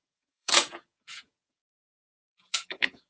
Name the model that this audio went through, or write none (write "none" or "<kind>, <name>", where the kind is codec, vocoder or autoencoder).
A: vocoder, Vocos